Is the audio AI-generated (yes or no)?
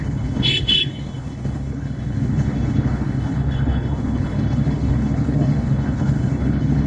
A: yes